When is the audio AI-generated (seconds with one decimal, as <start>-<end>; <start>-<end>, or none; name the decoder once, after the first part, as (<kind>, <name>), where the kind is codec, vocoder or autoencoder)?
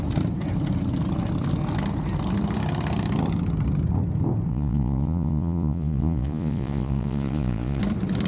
4.5-7.8 (vocoder, Vocos)